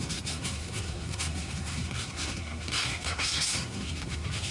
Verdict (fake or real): fake